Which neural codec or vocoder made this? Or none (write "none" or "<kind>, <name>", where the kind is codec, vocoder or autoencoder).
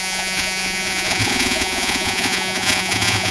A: vocoder, Vocos